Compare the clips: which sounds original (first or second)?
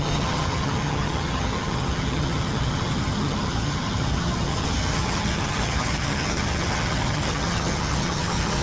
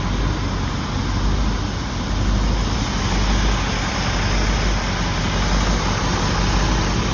second